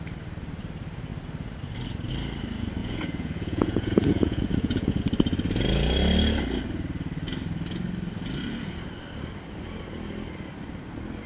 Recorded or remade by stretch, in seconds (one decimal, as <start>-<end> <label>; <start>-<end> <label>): 0.0-2.8 recorded; 2.8-5.0 remade; 5.0-11.3 recorded